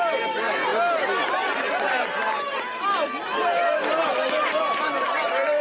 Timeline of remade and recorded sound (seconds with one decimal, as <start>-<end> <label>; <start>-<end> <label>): 0.0-5.6 recorded